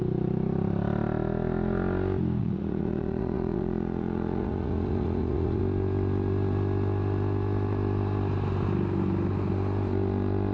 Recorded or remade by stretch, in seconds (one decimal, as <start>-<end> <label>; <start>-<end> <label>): 0.0-2.4 recorded; 2.4-5.6 remade; 5.6-10.5 recorded